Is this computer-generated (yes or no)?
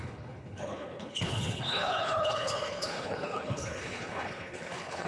yes